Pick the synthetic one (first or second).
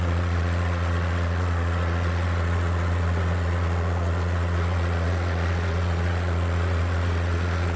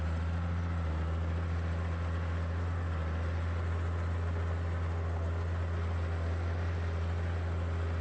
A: first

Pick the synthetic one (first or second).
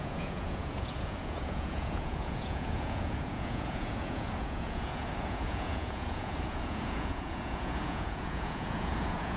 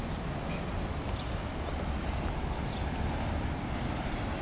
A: first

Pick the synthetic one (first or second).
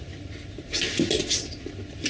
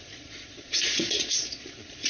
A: second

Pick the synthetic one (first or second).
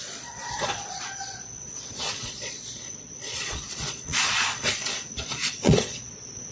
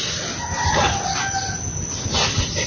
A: first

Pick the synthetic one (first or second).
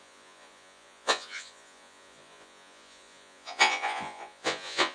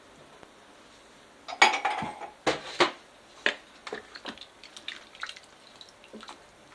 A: first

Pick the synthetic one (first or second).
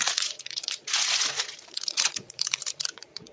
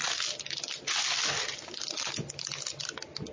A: first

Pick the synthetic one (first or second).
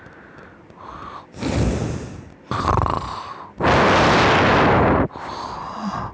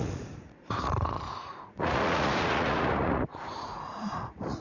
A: second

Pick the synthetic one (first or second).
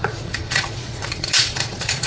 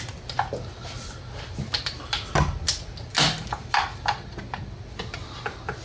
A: first